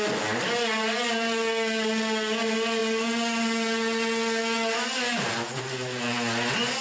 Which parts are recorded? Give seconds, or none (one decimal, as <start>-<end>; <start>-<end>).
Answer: 0.0-6.8